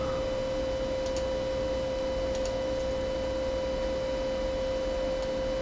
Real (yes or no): yes